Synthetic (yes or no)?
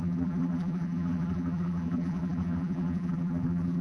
yes